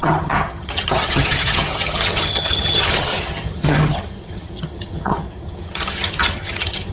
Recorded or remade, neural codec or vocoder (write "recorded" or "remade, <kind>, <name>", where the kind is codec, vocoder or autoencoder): remade, vocoder, HiFi-GAN